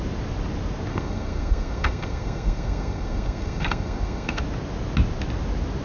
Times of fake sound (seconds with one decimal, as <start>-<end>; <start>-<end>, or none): 0.9-4.4